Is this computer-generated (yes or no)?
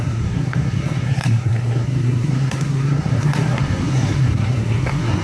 yes